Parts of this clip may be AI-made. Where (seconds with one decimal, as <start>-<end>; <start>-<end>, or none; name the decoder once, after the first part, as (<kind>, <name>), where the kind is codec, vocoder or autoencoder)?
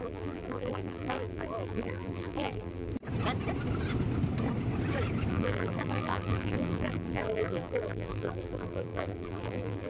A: 0.0-2.9 (vocoder, BigVGAN v2); 5.3-9.9